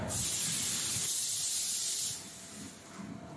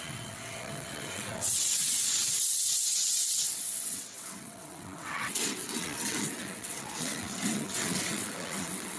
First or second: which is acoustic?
first